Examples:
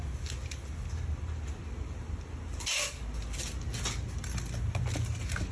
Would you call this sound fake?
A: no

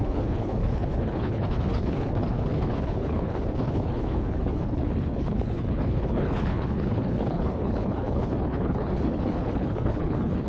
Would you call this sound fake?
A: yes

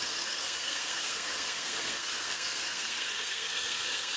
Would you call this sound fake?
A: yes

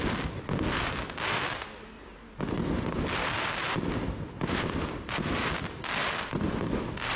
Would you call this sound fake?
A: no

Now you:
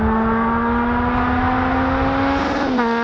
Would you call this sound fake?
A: no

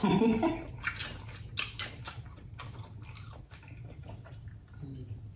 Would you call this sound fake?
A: no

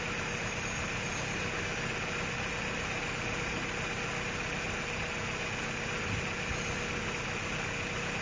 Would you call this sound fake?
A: no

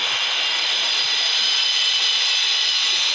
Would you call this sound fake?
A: no